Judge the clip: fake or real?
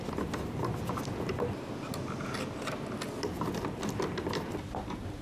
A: real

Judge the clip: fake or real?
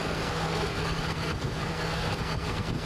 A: fake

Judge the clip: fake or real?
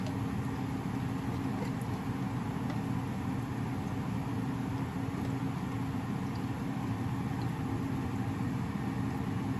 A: real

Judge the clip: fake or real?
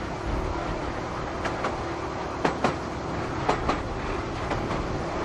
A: real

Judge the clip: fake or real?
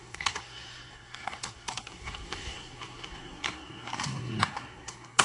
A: fake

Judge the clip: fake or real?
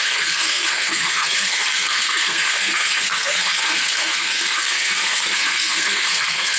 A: fake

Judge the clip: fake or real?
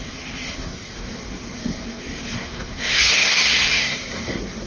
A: fake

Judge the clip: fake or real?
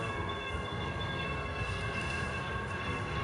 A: fake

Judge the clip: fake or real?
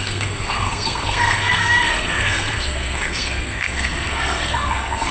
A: fake